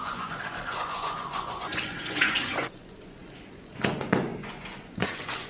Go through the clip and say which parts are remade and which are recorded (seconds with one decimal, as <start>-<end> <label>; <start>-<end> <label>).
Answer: 0.0-5.5 remade